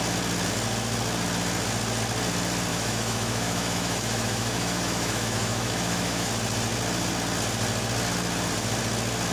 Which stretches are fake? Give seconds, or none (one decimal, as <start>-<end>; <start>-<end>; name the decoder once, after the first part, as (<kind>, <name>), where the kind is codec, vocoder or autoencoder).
2.7-6.3 (autoencoder, DAC-VAE)